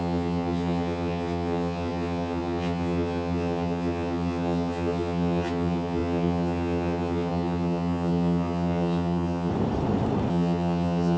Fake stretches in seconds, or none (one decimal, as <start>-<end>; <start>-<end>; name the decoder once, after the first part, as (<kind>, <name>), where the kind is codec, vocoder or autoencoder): 0.0-9.5 (vocoder, HiFi-GAN); 10.3-11.2